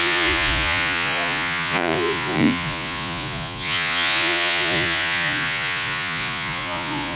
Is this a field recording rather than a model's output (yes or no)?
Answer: no